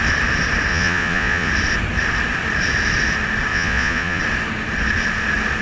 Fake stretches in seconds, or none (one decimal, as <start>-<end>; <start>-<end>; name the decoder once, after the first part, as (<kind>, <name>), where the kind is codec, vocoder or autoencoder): 0.7-1.5 (vocoder, Vocos); 3.5-4.2